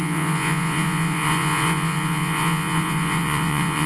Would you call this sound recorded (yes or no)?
no